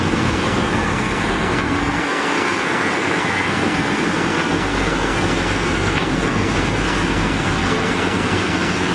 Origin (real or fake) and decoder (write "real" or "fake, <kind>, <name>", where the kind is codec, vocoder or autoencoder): fake, codec, SNAC